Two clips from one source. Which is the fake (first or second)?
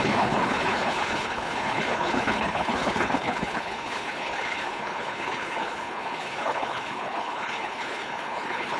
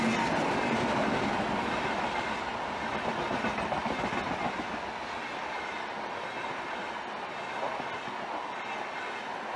first